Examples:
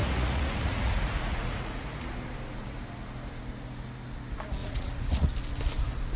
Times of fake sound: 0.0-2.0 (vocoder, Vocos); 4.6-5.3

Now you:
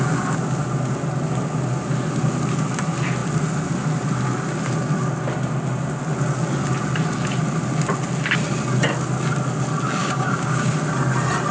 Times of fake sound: 10.0-10.7 (codec, DAC)

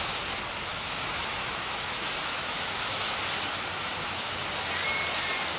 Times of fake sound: 0.7-3.1 (autoencoder, DAC-VAE); 3.7-4.4

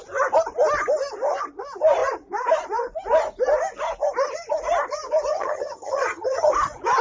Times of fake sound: 5.3-6.5 (vocoder, HiFi-GAN)

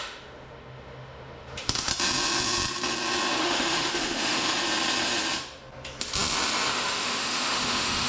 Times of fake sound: 0.0-1.9 (autoencoder, DAC-VAE); 3.4-4.6; 6.7-8.1

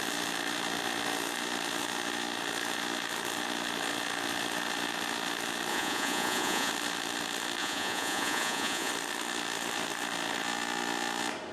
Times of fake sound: 5.7-6.7 (vocoder, Vocos); 7.6-8.9